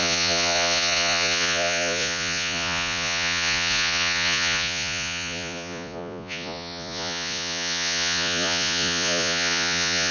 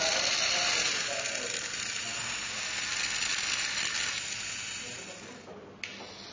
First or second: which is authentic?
second